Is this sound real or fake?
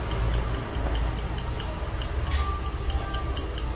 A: real